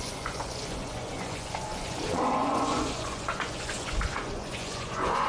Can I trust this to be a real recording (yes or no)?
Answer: no